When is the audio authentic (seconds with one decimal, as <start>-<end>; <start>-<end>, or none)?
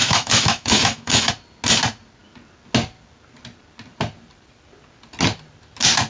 1.3-6.1